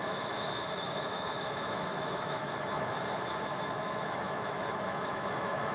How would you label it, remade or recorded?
remade